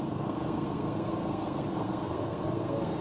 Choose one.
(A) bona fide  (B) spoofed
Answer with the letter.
B